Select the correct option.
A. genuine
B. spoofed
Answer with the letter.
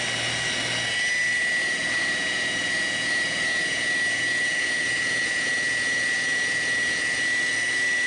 A